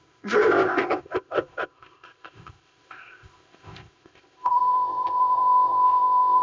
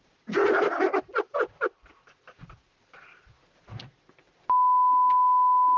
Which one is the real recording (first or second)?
second